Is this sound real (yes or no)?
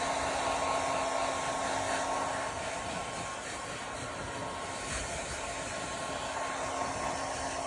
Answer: yes